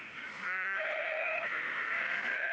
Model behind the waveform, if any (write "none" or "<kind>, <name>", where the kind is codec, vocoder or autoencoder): autoencoder, DAC-VAE